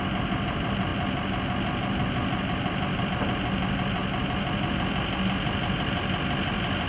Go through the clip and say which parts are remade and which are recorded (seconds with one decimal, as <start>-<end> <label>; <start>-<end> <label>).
0.0-6.9 recorded